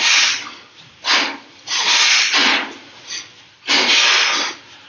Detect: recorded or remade recorded